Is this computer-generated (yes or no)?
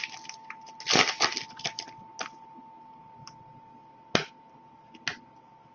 no